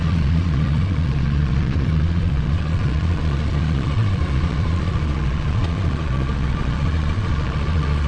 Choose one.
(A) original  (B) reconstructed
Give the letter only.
B